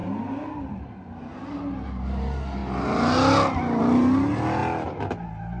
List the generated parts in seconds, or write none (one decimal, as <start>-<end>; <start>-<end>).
none